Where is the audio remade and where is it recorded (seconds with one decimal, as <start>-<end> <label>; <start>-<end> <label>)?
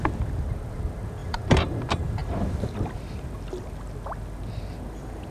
0.0-1.2 recorded; 1.2-1.8 remade; 1.8-2.2 recorded; 2.2-3.6 remade; 3.6-5.3 recorded